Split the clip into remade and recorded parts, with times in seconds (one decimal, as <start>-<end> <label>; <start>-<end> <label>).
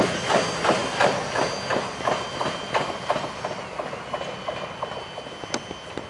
0.0-6.1 recorded